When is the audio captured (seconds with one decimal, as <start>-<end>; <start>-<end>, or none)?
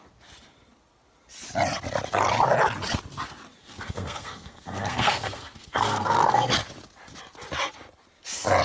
0.0-3.6; 6.5-8.6